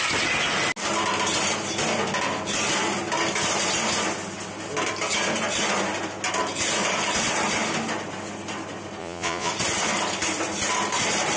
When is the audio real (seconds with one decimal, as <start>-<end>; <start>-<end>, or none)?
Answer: 0.0-9.0; 9.5-11.4